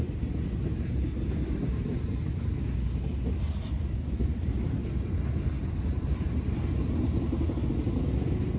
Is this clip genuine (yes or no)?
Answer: yes